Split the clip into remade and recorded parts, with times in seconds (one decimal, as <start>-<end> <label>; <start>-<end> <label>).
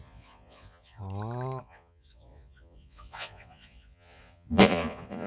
0.0-1.0 remade; 1.0-1.6 recorded; 1.6-5.3 remade